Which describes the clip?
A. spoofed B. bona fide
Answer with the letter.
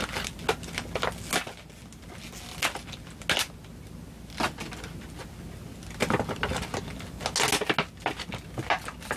B